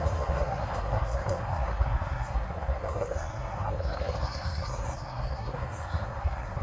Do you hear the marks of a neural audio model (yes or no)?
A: yes